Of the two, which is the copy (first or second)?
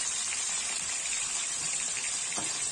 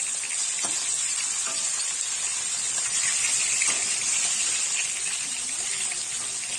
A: first